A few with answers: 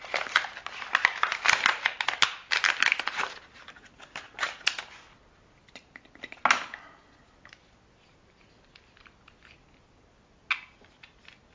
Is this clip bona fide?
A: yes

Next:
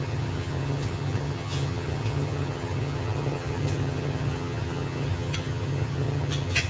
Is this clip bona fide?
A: no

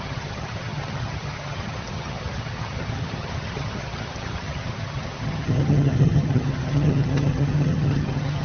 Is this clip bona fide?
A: no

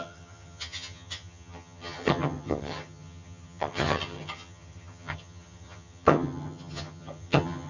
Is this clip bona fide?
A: no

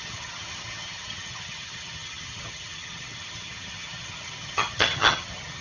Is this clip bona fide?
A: no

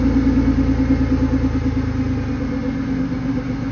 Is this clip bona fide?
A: yes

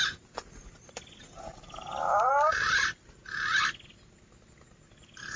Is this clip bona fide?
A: yes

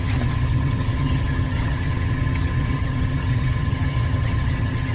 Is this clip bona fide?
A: no